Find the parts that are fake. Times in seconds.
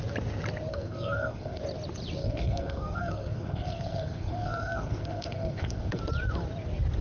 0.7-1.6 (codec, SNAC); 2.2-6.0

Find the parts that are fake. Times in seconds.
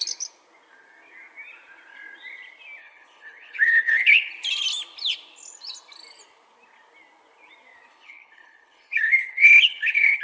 2.8-4.3 (codec, HILCodec); 7.9-10.2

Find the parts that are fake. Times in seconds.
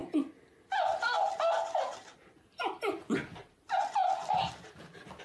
none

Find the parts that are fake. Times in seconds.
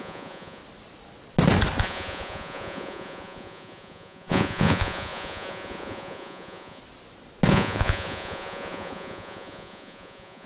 0.0-0.6 (vocoder, Vocos); 1.8-6.8; 7.5-10.5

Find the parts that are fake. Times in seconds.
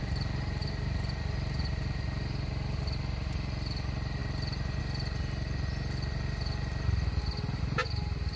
0.6-1.2 (vocoder, BigVGAN v2); 4.2-4.8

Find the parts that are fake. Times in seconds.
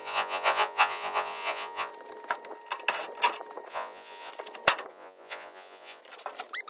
0.0-1.9 (vocoder, Vocos); 3.7-4.3; 4.9-6.0